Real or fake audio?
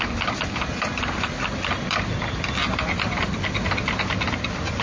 real